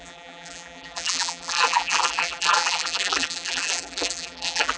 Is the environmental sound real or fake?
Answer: fake